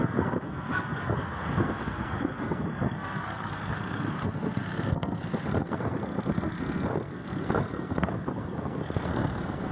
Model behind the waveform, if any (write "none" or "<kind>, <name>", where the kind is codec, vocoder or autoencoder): codec, SNAC